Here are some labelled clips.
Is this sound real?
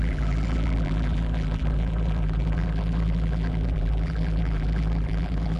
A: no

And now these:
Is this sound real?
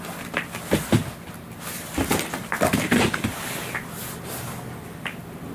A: yes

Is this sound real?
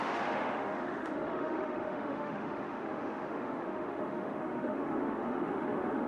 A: no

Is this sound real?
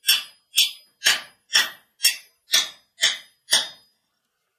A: yes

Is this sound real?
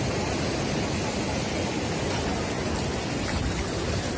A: yes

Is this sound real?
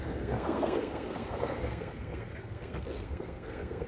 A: no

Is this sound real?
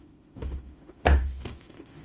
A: no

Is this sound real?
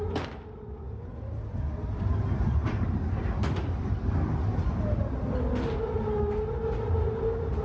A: yes